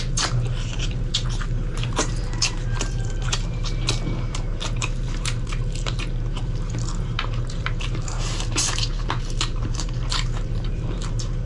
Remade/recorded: remade